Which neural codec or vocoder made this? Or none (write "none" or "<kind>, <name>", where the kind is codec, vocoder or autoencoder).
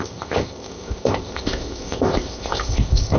codec, ZipCodec